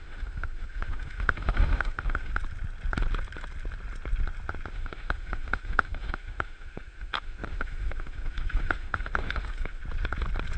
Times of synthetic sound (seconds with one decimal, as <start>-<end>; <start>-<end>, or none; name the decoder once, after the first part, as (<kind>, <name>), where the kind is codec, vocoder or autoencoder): 0.0-2.3 (autoencoder, DAC-VAE); 4.7-9.8